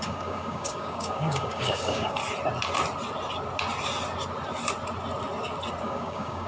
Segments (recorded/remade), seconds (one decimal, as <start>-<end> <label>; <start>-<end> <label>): 0.0-2.2 remade; 2.2-5.8 recorded; 5.8-6.5 remade